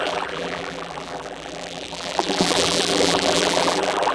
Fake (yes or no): yes